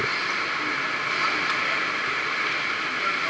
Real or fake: real